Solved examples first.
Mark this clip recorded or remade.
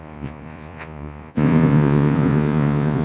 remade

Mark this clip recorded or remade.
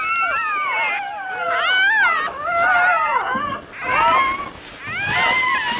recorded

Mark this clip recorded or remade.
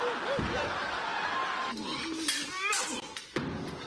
recorded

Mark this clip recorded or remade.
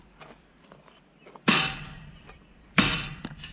remade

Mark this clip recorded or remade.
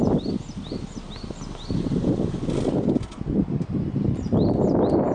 recorded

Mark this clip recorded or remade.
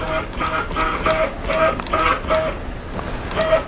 recorded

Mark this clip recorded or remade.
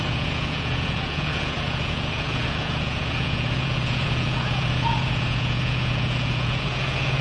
remade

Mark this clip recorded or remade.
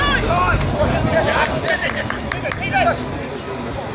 recorded